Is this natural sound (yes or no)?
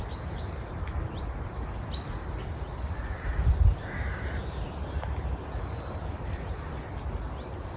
yes